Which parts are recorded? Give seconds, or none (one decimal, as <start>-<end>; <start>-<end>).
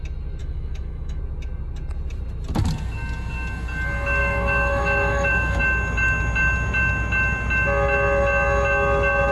0.0-0.4; 1.2-4.2; 5.6-9.3